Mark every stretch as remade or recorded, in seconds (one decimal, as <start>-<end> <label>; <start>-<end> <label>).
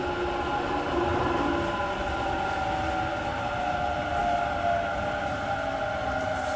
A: 0.0-6.6 recorded